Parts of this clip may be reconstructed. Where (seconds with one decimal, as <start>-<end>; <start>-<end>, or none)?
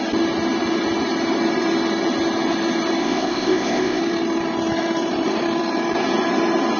3.0-4.0